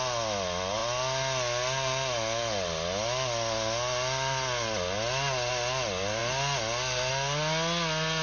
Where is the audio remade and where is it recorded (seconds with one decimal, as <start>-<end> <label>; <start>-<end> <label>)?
0.0-8.2 recorded